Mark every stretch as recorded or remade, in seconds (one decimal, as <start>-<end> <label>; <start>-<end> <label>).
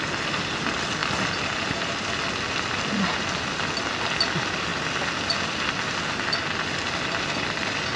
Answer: 0.0-8.0 recorded